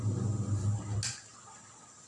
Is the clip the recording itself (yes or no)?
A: yes